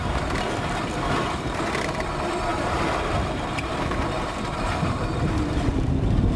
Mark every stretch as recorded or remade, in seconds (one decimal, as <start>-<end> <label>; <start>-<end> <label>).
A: 0.0-2.5 recorded; 2.5-5.9 remade; 5.9-6.4 recorded